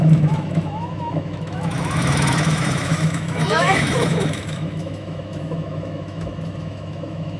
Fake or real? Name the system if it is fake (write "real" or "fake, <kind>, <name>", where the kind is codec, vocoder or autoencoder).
fake, autoencoder, DAC-VAE